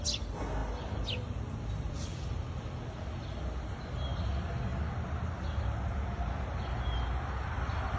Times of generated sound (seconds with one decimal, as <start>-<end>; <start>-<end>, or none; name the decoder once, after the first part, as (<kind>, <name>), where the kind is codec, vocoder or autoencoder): none